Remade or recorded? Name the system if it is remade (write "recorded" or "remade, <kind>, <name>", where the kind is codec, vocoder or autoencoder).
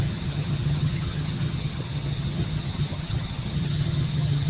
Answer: remade, vocoder, HiFi-GAN